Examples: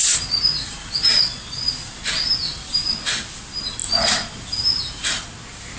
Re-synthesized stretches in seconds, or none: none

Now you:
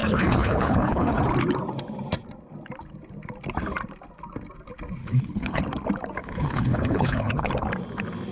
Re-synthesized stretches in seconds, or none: 0.0-1.2 (codec, HILCodec); 5.0-5.6; 6.2-7.5